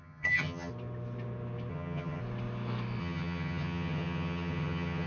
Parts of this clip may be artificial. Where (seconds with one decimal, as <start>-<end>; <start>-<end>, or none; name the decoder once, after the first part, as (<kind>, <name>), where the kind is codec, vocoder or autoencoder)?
0.0-0.7 (vocoder, HiFi-GAN); 1.7-2.2; 3.0-5.1